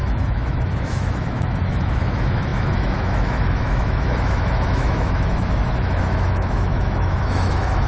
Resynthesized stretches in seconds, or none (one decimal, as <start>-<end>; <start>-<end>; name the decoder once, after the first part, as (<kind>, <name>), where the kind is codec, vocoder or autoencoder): 0.0-7.9 (autoencoder, DAC-VAE)